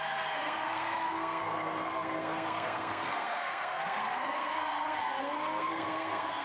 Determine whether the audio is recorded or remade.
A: remade